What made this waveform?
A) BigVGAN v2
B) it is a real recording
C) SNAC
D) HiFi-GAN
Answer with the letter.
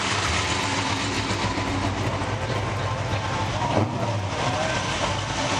B